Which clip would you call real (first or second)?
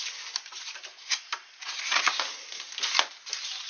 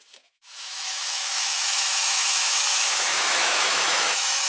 first